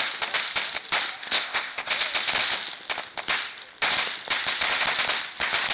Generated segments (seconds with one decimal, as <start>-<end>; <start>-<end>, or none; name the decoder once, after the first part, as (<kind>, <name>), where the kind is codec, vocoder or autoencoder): 1.2-1.9 (codec, ZipCodec)